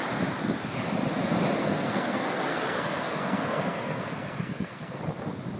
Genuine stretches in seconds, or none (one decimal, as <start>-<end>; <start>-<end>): 0.0-1.6; 5.0-5.6